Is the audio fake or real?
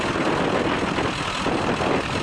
real